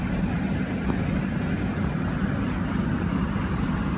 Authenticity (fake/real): real